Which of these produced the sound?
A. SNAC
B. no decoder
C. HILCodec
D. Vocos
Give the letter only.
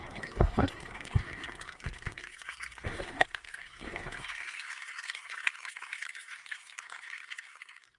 A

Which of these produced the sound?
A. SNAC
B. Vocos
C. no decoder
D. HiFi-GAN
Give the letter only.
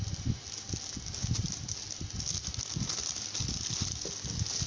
C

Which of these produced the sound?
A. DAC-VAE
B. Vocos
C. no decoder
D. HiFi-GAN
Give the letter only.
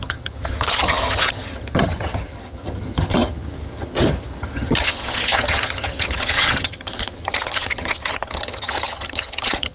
D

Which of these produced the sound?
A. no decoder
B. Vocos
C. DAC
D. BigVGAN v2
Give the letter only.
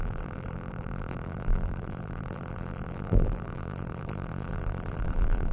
D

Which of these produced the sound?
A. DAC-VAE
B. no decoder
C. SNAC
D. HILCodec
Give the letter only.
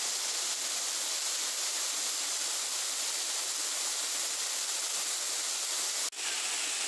B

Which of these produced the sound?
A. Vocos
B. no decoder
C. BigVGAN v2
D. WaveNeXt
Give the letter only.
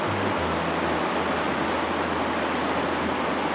B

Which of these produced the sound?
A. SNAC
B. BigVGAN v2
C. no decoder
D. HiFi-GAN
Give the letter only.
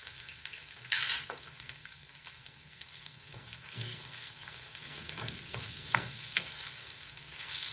A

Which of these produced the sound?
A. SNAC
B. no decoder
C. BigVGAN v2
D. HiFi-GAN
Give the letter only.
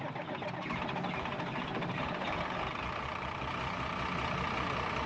B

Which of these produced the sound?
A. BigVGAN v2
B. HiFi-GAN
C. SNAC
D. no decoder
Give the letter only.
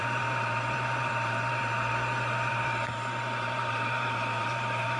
A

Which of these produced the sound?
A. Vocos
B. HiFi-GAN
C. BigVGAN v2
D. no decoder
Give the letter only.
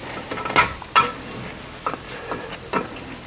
D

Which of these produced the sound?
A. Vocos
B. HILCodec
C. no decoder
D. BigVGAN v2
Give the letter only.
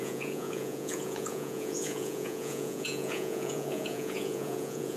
A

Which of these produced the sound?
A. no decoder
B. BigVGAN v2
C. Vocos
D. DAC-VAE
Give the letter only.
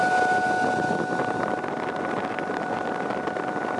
A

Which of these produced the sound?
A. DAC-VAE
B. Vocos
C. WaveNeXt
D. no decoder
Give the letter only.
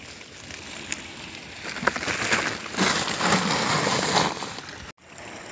D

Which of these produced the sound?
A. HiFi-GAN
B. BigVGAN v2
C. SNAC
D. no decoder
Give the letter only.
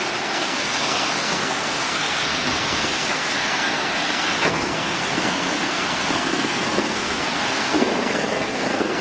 C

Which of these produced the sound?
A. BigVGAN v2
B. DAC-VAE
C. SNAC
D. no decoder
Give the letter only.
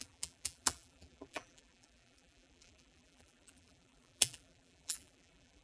A